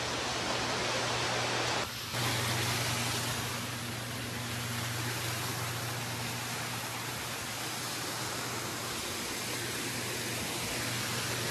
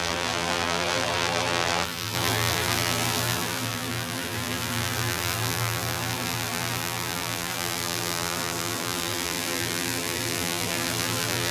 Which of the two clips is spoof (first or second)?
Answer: second